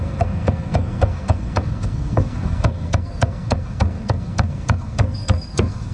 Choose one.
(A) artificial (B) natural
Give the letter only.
A